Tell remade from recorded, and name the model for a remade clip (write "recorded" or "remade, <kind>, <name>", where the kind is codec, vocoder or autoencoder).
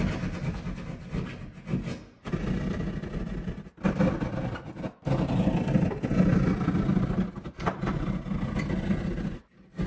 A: recorded